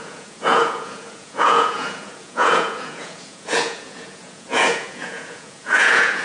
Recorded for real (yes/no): no